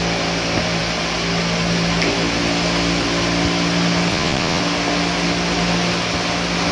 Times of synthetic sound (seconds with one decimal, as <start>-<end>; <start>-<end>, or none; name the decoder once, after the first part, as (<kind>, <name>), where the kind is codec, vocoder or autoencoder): 4.1-4.6 (vocoder, Vocos)